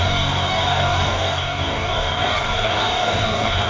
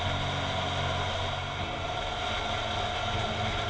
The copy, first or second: first